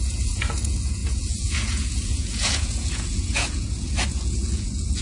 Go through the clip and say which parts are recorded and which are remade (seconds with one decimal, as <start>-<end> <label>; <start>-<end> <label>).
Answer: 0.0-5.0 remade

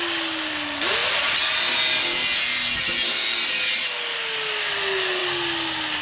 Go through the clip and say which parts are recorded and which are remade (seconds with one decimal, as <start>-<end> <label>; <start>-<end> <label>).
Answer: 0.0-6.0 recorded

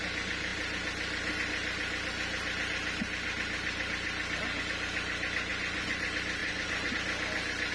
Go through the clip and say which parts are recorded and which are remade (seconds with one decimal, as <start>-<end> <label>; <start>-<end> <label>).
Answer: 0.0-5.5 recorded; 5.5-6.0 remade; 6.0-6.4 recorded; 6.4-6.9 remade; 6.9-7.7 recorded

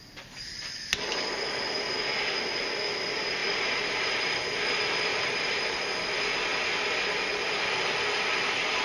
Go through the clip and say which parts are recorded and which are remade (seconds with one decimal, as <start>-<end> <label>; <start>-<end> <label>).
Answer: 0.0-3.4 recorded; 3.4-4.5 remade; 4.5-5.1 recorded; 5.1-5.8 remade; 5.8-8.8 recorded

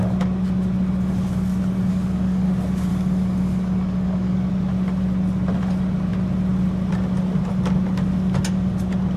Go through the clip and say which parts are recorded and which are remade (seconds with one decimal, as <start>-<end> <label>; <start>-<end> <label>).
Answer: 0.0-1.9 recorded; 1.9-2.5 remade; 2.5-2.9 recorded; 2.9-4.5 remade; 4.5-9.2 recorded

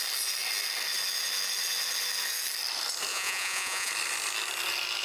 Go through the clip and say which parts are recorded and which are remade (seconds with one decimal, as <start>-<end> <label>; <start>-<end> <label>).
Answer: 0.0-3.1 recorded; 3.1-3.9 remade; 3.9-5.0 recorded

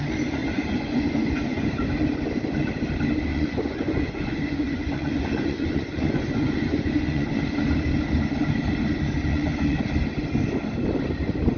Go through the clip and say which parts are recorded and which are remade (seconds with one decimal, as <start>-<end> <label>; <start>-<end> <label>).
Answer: 0.0-0.4 recorded; 0.4-1.7 remade; 1.7-3.3 recorded; 3.3-7.4 remade; 7.4-9.3 recorded; 9.3-9.8 remade; 9.8-11.6 recorded

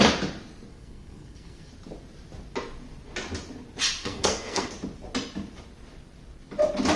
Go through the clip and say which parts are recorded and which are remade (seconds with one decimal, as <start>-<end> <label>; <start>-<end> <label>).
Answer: 0.0-0.7 recorded; 0.7-1.7 remade; 1.7-4.0 recorded; 4.0-4.7 remade; 4.7-7.0 recorded